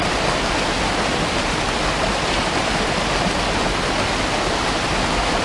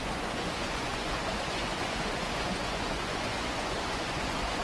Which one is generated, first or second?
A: second